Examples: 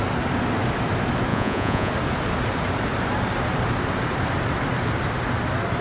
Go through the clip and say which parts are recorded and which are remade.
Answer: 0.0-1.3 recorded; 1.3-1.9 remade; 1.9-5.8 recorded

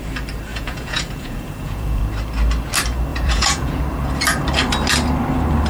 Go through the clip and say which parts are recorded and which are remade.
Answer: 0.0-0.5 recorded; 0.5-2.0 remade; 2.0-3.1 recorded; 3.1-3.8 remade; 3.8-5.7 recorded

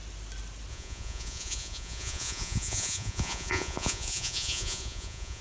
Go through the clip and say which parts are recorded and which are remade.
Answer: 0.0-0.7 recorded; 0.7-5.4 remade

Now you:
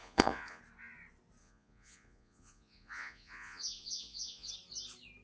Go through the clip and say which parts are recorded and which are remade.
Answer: 0.0-0.6 remade; 0.6-1.4 recorded; 1.4-4.5 remade; 4.5-5.2 recorded

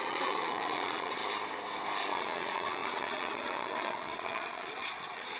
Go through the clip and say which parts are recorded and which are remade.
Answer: 0.0-1.2 remade; 1.2-2.1 recorded; 2.1-5.4 remade

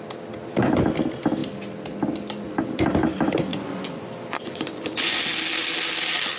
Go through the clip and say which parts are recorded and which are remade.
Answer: 0.0-3.5 recorded; 3.5-5.2 remade; 5.2-6.4 recorded